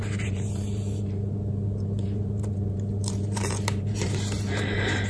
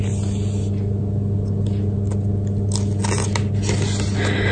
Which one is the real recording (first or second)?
second